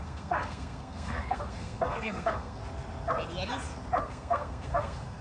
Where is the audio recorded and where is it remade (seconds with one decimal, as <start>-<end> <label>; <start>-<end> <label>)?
0.0-2.6 remade; 2.6-4.0 recorded; 4.0-5.2 remade